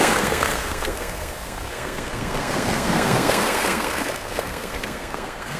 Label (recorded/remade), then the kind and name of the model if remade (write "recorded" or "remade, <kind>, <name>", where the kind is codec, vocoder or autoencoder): remade, codec, SNAC